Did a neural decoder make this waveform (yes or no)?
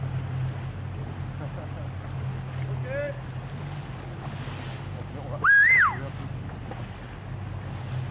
no